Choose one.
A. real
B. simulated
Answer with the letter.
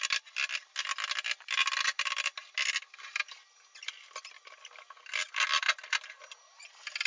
A